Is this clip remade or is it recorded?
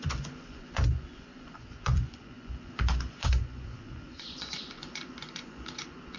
remade